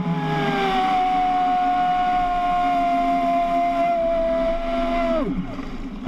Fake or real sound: real